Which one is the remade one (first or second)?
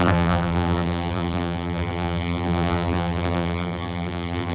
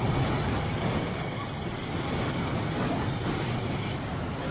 first